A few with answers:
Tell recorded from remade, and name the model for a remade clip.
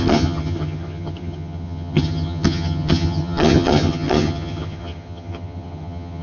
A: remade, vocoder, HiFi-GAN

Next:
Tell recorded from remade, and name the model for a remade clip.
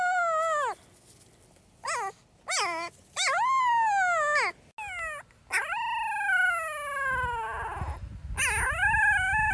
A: recorded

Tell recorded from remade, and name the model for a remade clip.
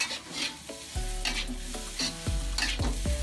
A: recorded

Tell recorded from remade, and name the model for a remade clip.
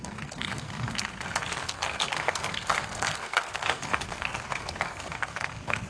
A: remade, codec, SNAC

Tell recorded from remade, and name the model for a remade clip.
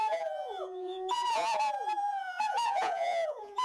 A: remade, vocoder, Vocos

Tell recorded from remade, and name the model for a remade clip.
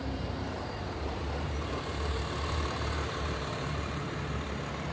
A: remade, vocoder, BigVGAN v2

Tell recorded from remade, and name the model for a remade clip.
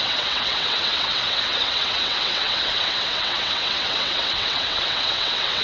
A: remade, vocoder, WaveNeXt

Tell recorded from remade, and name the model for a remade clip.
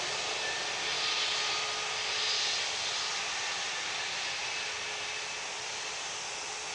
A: recorded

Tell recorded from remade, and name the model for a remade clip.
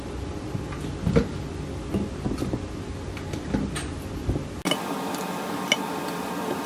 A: recorded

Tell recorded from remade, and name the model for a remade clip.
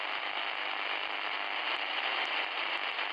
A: recorded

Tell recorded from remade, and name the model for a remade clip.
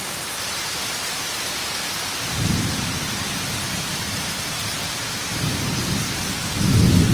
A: remade, vocoder, BigVGAN v2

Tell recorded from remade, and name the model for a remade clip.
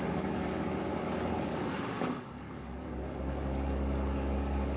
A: remade, codec, DAC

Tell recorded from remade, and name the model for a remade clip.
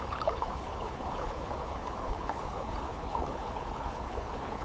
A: remade, codec, HILCodec